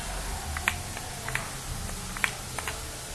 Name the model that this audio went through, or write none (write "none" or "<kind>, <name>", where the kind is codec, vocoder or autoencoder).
none